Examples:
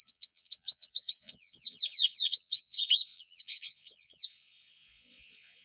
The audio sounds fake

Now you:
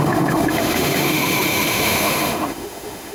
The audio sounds fake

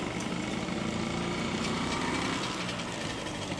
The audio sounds real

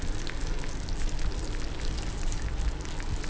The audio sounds real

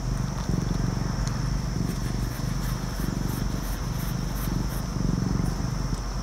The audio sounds real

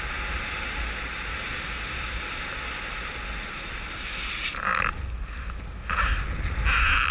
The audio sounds real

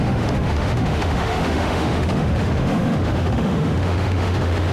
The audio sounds fake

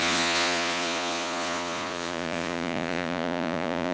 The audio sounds fake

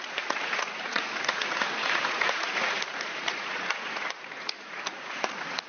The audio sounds fake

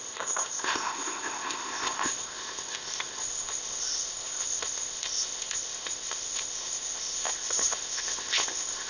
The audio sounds fake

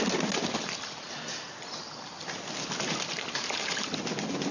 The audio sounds real